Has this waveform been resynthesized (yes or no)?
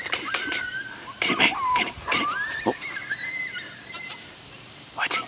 yes